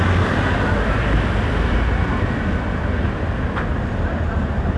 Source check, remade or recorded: recorded